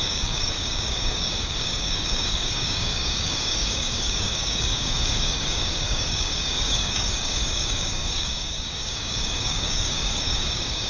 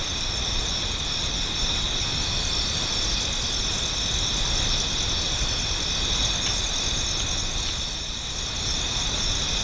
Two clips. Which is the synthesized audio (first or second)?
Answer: first